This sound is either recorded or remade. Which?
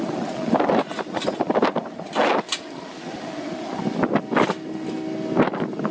recorded